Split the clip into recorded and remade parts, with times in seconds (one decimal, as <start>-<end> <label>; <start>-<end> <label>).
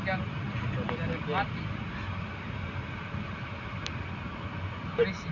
0.0-5.3 recorded